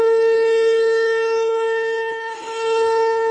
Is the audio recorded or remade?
remade